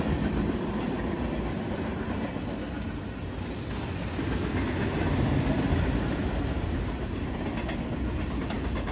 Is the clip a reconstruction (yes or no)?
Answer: no